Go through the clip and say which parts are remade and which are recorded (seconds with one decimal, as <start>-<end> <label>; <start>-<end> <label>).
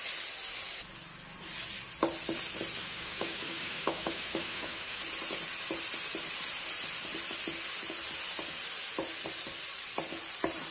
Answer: 0.0-2.8 recorded; 2.8-5.0 remade; 5.0-10.7 recorded